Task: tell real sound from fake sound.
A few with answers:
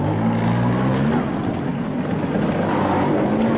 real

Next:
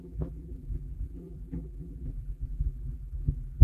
fake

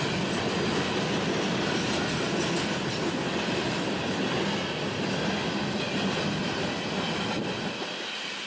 real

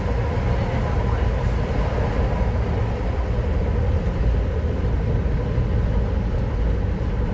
real